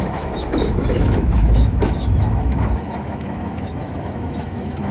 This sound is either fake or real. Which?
fake